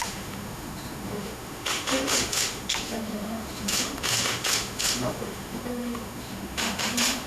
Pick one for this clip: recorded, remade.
remade